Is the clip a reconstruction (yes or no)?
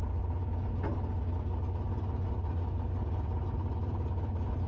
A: no